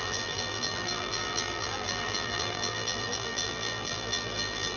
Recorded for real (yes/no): no